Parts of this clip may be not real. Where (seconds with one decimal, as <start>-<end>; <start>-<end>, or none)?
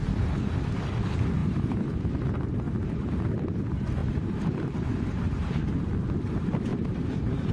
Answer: 1.4-2.5; 4.0-5.6; 6.7-7.5